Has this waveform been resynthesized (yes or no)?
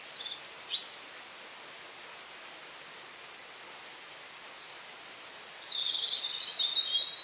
no